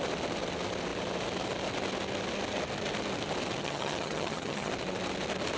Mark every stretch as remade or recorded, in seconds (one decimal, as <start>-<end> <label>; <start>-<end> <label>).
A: 0.0-3.6 recorded; 3.6-4.7 remade; 4.7-5.6 recorded